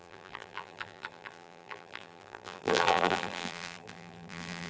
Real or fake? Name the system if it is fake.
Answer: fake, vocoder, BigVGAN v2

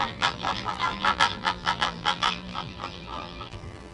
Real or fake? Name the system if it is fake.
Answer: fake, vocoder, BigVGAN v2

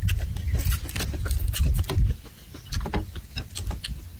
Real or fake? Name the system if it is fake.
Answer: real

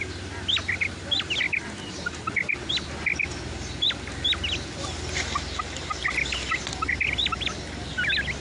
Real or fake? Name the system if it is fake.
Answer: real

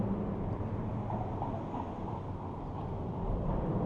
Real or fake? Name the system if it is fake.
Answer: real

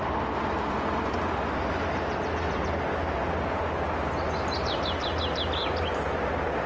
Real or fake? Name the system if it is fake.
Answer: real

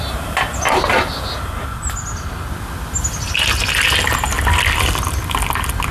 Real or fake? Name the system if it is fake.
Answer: real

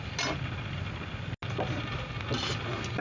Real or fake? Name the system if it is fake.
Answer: real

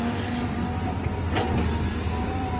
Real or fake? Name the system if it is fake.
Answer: fake, vocoder, BigVGAN v2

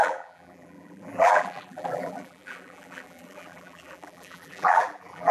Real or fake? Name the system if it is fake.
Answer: fake, vocoder, BigVGAN v2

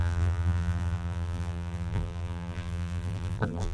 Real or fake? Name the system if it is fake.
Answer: fake, vocoder, BigVGAN v2